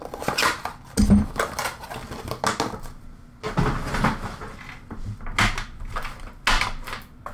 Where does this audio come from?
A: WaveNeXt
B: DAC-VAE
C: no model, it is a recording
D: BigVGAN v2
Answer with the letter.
C